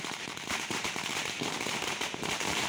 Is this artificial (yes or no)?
yes